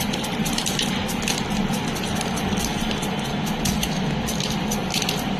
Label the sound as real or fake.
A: real